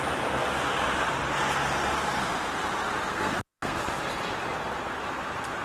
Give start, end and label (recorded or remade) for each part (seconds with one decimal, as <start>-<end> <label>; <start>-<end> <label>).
0.0-3.1 recorded; 3.1-3.8 remade; 3.8-5.6 recorded